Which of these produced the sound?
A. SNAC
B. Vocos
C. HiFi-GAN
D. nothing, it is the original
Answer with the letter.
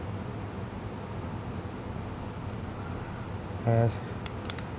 D